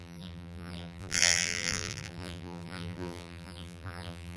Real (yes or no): no